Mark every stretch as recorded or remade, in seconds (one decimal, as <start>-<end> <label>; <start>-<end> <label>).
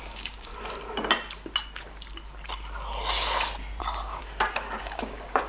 0.0-0.5 remade; 0.5-3.8 recorded; 3.8-4.2 remade; 4.2-4.8 recorded; 4.8-5.5 remade